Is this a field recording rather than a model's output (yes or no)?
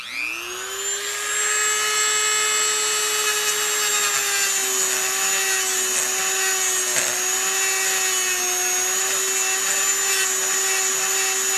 yes